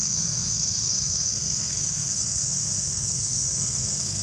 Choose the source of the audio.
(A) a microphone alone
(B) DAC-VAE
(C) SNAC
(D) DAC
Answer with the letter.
C